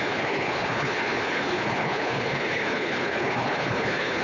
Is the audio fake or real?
fake